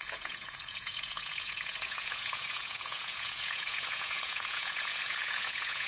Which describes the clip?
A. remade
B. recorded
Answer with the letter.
A